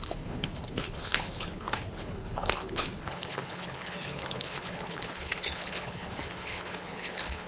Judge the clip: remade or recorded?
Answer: remade